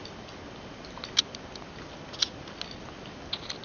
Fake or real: real